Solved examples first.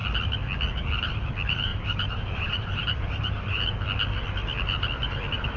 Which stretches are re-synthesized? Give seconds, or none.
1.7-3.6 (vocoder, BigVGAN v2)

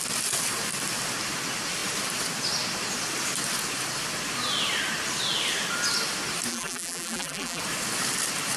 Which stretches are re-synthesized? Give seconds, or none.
6.5-7.6 (vocoder, BigVGAN v2)

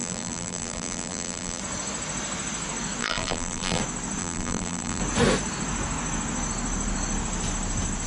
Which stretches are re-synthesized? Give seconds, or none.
0.0-1.6 (vocoder, BigVGAN v2); 3.0-3.8; 4.2-5.0

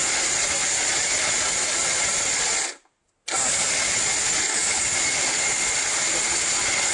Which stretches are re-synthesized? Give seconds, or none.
none

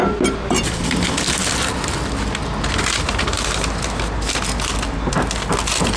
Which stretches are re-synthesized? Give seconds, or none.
none

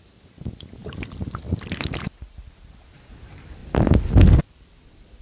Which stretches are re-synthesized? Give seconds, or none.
none

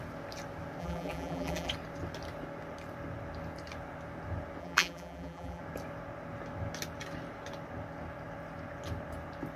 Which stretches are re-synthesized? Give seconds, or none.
0.8-1.7 (vocoder, BigVGAN v2); 4.6-5.6

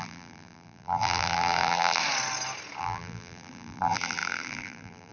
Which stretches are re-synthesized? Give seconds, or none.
0.0-2.0 (vocoder, BigVGAN v2); 2.8-5.1